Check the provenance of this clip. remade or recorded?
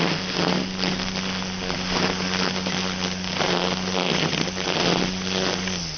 recorded